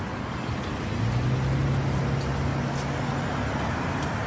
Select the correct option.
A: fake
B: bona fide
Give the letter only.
B